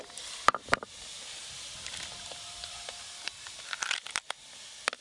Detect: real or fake real